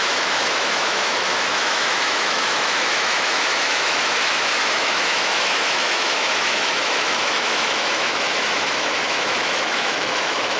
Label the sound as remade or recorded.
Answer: remade